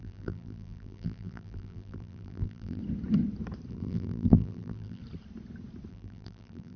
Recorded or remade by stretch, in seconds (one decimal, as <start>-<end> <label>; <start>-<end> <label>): 0.0-2.8 remade; 2.8-3.7 recorded; 3.7-5.0 remade; 5.0-5.9 recorded; 5.9-6.8 remade